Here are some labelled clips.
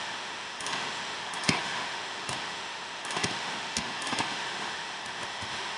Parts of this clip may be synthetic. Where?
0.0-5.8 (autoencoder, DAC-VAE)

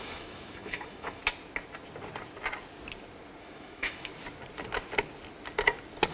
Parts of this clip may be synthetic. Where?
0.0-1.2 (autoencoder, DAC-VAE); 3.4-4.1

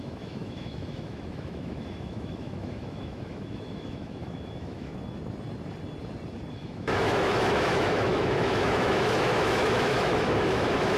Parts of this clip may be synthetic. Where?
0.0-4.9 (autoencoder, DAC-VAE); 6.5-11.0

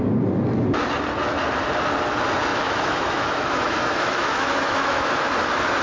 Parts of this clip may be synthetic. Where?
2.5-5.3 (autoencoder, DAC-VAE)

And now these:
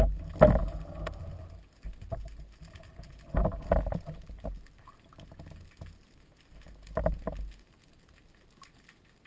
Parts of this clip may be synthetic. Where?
none

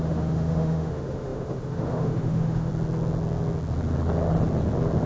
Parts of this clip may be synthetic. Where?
0.0-2.7 (autoencoder, DAC-VAE)